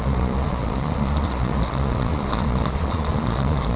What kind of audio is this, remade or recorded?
remade